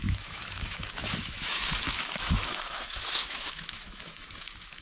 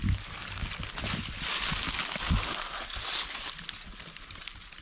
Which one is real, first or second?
second